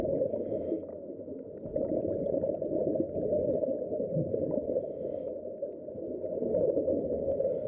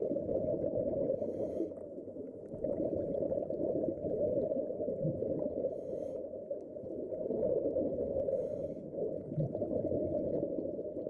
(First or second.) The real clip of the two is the first